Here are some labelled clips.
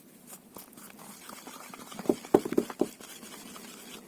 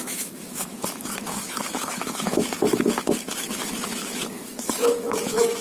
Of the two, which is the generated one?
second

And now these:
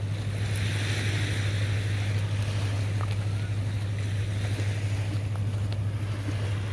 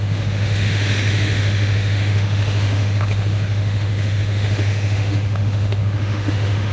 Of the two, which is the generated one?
second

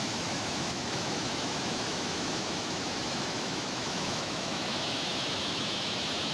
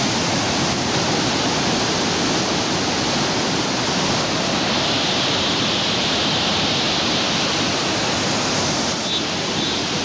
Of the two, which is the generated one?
first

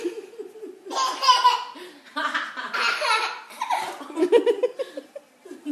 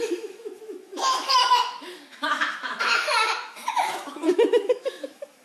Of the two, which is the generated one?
second